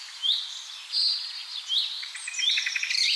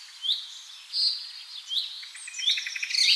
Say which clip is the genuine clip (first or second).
second